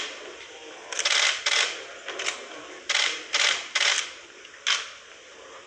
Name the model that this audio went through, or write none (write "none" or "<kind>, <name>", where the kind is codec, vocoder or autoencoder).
none